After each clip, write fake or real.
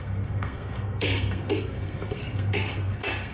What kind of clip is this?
fake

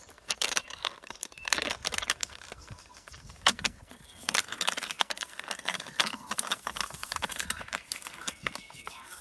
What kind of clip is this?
fake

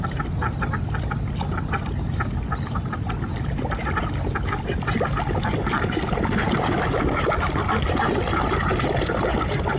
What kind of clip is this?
real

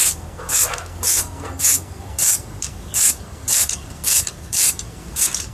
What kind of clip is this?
fake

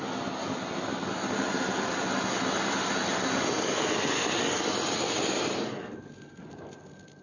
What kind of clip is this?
real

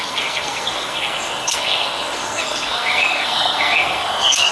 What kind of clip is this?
fake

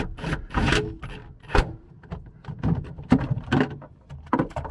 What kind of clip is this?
real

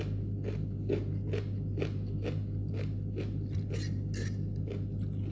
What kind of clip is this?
real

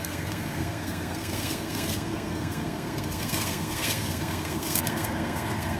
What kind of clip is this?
fake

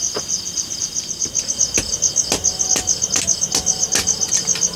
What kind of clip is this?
real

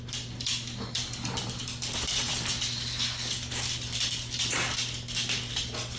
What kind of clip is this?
real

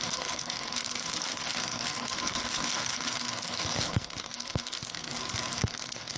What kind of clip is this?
fake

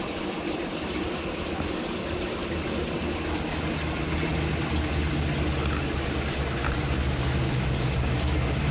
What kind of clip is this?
real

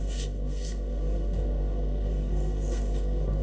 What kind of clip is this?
fake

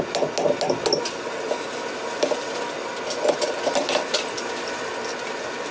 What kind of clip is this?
real